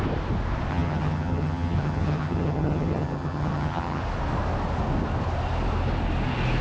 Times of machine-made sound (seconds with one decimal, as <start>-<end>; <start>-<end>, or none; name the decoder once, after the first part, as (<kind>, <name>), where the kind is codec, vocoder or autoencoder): 0.7-4.0 (vocoder, HiFi-GAN)